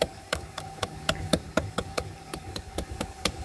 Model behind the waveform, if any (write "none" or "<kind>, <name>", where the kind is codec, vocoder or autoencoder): codec, DAC